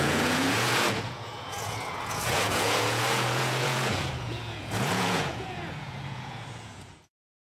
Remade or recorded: remade